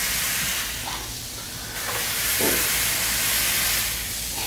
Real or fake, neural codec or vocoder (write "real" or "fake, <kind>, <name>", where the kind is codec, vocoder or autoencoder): real